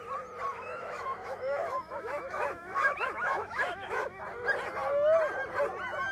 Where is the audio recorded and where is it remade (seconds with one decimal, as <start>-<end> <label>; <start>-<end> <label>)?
0.0-0.5 recorded; 0.5-4.2 remade; 4.2-6.1 recorded